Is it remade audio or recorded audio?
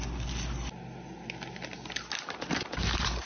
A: recorded